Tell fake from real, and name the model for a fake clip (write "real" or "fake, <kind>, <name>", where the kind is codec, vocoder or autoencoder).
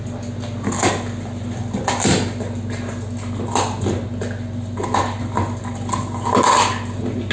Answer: real